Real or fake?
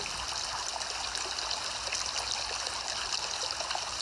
real